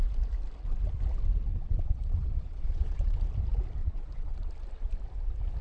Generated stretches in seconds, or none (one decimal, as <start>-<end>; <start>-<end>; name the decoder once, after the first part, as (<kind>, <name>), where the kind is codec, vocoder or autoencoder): 1.5-3.2 (vocoder, Vocos); 3.8-4.5